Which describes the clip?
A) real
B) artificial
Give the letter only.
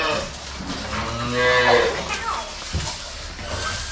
A